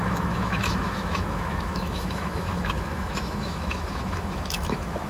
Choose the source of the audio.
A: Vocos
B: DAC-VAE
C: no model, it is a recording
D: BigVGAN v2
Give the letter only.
B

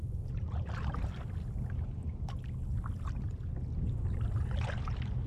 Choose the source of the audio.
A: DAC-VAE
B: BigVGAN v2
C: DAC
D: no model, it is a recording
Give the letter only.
D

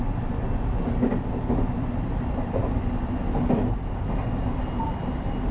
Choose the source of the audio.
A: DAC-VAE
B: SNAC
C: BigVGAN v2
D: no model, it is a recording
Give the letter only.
D